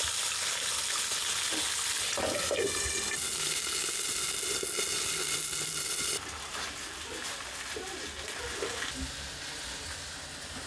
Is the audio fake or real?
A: real